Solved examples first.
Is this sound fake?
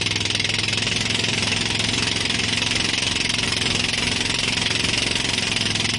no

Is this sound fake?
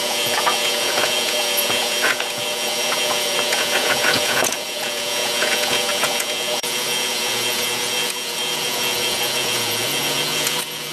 yes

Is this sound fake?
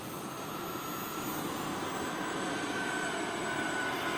no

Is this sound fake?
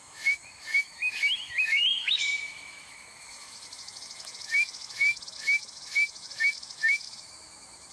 yes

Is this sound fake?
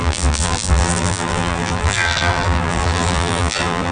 yes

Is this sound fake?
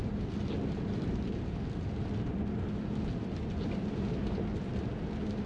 no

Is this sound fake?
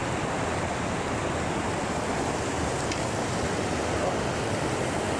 no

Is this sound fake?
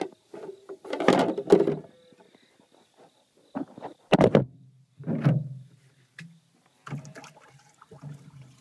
no